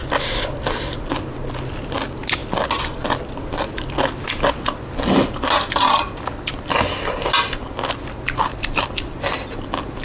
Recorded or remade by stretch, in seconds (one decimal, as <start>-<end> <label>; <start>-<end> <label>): 0.0-10.0 recorded